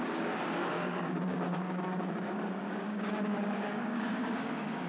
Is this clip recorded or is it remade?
remade